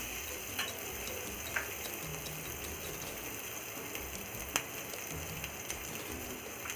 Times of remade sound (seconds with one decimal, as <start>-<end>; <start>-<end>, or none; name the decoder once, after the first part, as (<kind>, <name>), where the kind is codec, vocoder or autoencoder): none